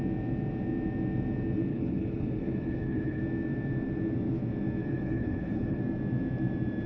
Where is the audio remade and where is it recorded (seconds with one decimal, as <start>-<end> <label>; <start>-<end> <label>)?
0.0-1.7 recorded; 1.7-3.2 remade; 3.2-4.8 recorded; 4.8-5.8 remade; 5.8-6.9 recorded